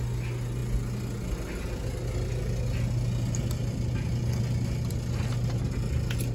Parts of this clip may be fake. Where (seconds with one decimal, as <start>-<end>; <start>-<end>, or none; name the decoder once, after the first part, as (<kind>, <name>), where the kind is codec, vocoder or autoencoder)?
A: none